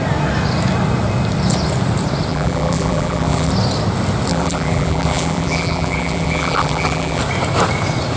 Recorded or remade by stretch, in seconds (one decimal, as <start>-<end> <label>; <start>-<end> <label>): 0.0-2.3 recorded; 2.3-3.5 remade; 3.5-4.3 recorded; 4.3-7.2 remade; 7.2-8.2 recorded